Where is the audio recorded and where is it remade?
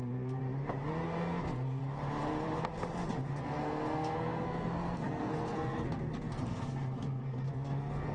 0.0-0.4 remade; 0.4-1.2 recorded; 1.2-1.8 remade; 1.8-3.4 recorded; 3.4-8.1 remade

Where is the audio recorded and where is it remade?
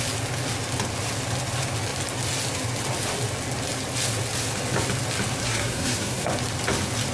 0.0-5.4 recorded; 5.4-6.3 remade; 6.3-7.1 recorded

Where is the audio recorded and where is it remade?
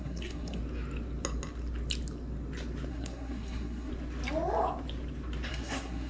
0.0-0.6 remade; 0.6-2.9 recorded; 2.9-3.9 remade; 3.9-5.5 recorded; 5.5-6.1 remade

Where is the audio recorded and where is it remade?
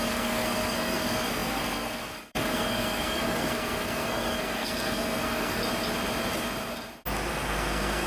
0.0-5.6 remade; 5.6-7.3 recorded; 7.3-8.1 remade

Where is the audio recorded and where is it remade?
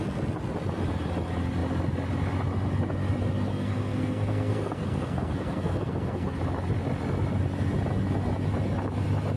0.0-3.5 recorded; 3.5-6.4 remade; 6.4-9.4 recorded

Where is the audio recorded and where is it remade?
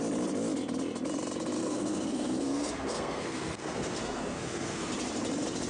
0.0-1.6 recorded; 1.6-4.9 remade; 4.9-5.7 recorded